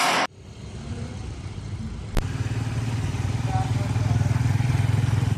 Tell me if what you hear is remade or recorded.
recorded